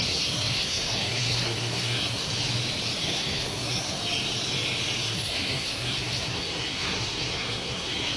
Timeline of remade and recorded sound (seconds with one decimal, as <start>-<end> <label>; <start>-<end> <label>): 0.0-2.3 remade; 2.3-3.0 recorded; 3.0-4.0 remade; 4.0-5.0 recorded; 5.0-8.2 remade